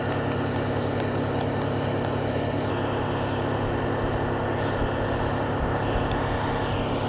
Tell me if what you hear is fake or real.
real